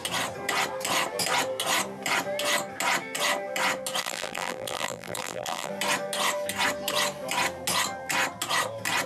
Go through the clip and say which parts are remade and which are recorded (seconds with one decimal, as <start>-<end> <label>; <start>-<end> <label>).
0.0-4.0 recorded; 4.0-5.7 remade; 5.7-9.1 recorded